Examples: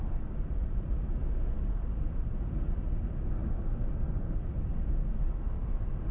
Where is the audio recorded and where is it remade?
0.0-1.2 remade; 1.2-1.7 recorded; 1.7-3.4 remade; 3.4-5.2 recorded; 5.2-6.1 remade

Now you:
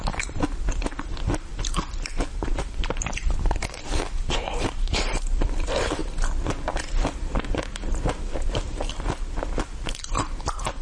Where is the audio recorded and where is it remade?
0.0-1.5 remade; 1.5-2.4 recorded; 2.4-6.0 remade; 6.0-8.9 recorded; 8.9-10.8 remade

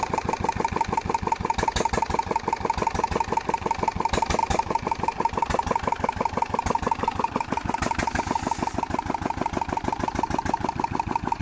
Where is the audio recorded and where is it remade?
0.0-11.4 recorded

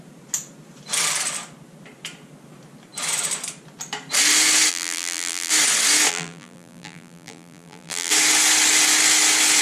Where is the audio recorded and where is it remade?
0.0-4.7 recorded; 4.7-5.5 remade; 5.5-6.1 recorded; 6.1-8.1 remade; 8.1-9.6 recorded